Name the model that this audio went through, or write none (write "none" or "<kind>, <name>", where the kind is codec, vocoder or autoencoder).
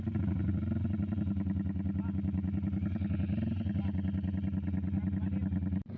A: none